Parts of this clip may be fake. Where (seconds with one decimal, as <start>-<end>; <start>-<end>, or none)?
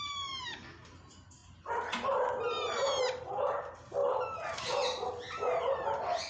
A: none